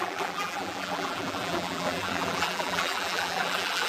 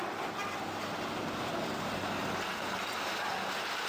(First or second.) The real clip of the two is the second